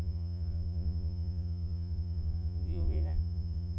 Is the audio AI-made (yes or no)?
yes